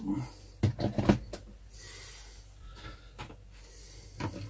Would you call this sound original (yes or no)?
yes